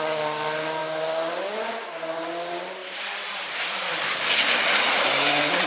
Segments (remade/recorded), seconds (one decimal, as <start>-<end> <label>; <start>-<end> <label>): 0.0-2.8 recorded; 2.8-4.2 remade; 4.2-5.7 recorded